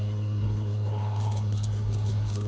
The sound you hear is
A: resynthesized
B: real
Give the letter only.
A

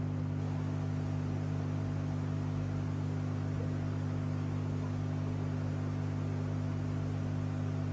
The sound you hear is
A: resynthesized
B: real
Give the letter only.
B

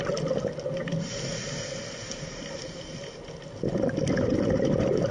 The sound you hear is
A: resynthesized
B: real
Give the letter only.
B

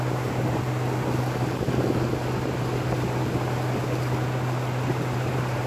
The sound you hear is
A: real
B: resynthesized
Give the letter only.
A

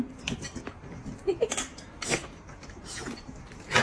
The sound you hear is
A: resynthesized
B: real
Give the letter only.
B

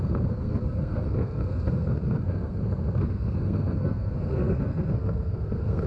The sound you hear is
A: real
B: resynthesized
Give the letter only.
B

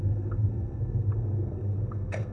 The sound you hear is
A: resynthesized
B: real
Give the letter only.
A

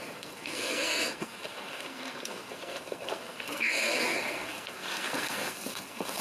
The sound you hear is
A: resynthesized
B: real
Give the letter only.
A